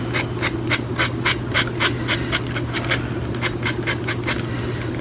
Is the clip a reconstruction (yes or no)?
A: no